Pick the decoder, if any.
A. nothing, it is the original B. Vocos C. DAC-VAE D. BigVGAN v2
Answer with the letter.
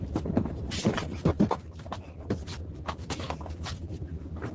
D